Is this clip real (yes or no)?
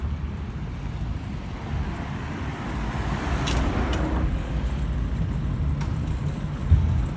yes